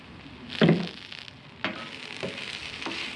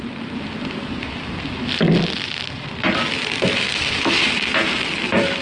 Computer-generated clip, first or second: second